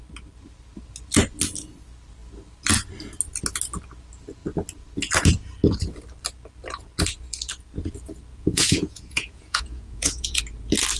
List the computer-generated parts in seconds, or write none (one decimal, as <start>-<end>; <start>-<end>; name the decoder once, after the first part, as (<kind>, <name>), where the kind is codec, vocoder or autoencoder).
8.3-10.4 (vocoder, Vocos)